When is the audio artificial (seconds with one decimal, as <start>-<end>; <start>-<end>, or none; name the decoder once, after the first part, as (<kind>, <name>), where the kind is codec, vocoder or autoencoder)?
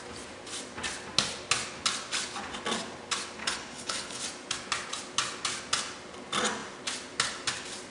3.4-4.2 (codec, HILCodec)